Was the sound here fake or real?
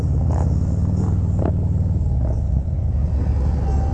real